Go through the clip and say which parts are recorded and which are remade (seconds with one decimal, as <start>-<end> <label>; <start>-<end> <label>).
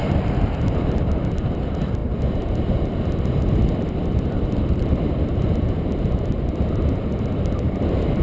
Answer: 0.0-8.2 remade